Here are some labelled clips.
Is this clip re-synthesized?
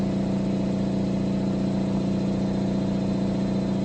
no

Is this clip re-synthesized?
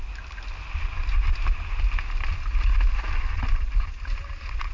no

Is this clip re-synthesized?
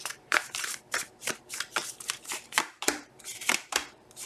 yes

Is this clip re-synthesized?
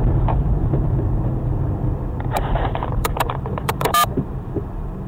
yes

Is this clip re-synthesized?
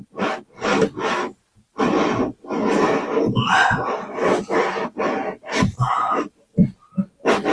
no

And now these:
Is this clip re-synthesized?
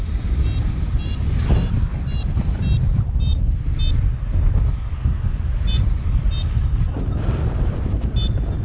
no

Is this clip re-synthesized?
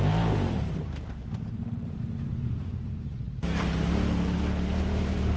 yes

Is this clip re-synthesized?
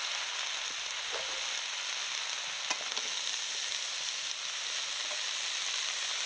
no